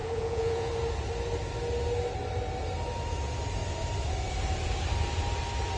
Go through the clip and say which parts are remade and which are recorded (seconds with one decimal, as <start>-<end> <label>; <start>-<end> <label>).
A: 0.0-0.7 remade; 0.7-5.8 recorded